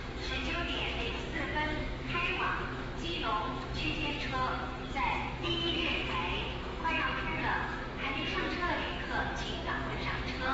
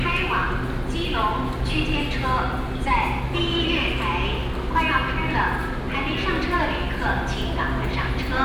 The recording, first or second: second